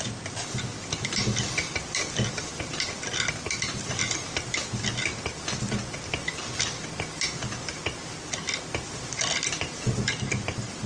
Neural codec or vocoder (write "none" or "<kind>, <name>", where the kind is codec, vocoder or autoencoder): none